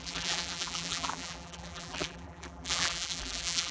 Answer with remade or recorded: remade